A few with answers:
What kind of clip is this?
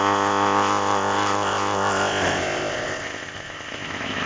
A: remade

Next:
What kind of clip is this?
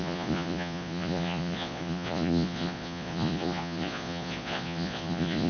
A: remade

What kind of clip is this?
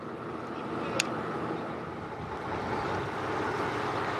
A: recorded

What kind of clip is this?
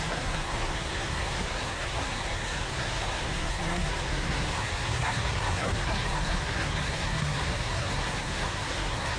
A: remade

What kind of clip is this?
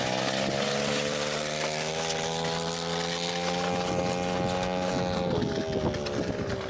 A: recorded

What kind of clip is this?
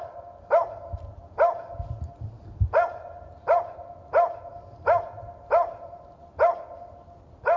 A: recorded